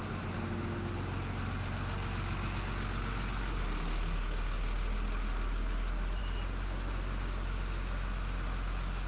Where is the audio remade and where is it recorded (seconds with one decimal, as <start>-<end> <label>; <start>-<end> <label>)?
0.0-9.1 recorded